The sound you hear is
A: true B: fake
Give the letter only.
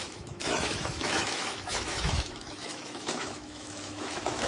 B